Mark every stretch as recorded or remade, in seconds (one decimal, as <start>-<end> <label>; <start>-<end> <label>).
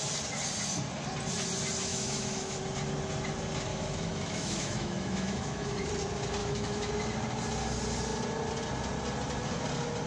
0.0-1.9 recorded; 1.9-2.6 remade; 2.6-3.7 recorded; 3.7-5.9 remade; 5.9-6.4 recorded; 6.4-6.9 remade; 6.9-10.1 recorded